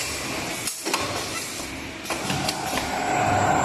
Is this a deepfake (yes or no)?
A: no